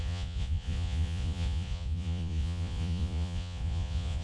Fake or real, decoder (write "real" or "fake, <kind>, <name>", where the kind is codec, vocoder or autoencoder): fake, vocoder, Vocos